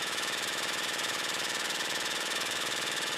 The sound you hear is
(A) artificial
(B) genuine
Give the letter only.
A